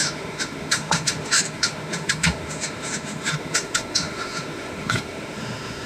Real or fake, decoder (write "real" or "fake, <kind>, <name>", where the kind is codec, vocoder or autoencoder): fake, autoencoder, DAC-VAE